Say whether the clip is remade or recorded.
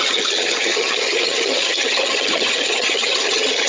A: remade